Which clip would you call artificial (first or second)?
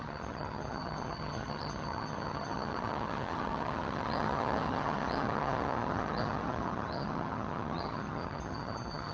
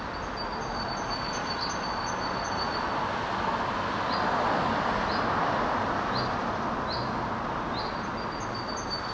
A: first